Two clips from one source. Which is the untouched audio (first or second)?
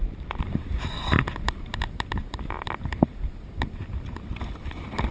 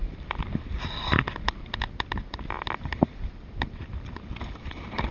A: second